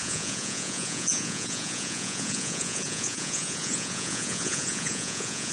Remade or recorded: remade